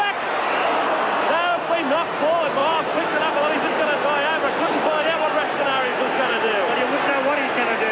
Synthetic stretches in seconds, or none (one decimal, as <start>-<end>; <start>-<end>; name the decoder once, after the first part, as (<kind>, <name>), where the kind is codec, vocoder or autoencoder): none

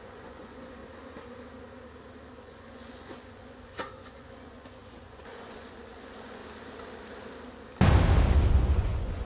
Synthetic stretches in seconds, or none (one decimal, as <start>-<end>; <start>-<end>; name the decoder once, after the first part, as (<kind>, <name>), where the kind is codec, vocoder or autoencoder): 0.0-0.8 (vocoder, Vocos); 2.4-6.4; 8.5-9.2